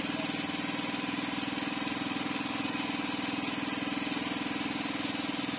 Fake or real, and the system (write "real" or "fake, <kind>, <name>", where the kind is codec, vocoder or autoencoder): real